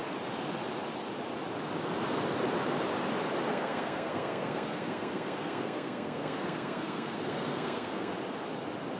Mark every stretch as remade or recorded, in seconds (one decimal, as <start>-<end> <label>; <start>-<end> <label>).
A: 0.0-3.5 recorded; 3.5-8.1 remade; 8.1-9.0 recorded